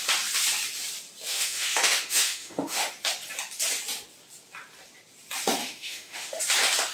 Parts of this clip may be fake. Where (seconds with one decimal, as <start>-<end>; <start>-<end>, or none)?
1.3-2.9; 5.6-6.4